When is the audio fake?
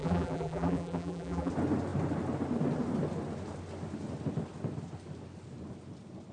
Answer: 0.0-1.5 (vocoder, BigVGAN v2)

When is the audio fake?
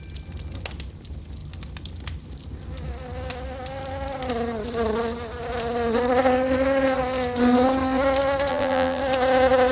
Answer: 8.5-9.0 (vocoder, BigVGAN v2)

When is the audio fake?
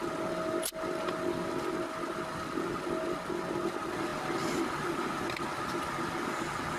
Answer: none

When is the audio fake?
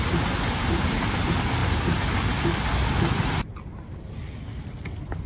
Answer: 0.0-1.6 (vocoder, BigVGAN v2); 4.8-5.3